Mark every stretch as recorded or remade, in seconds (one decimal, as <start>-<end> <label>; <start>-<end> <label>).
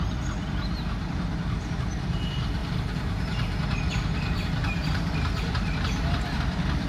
0.0-2.6 recorded; 2.6-6.4 remade; 6.4-6.9 recorded